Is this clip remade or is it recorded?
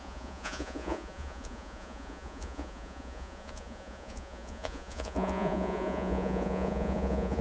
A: remade